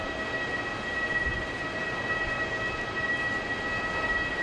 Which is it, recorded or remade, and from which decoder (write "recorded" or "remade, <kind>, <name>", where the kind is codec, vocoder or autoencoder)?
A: recorded